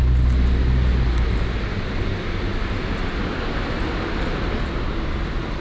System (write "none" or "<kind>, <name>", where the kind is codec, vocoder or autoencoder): none